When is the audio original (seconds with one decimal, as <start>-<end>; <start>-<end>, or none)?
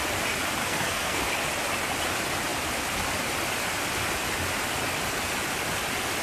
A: 0.0-0.6; 1.2-6.2